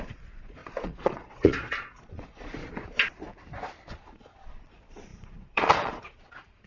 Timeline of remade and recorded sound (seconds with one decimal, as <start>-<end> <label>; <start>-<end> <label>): 0.0-2.6 remade; 2.6-3.9 recorded; 3.9-6.7 remade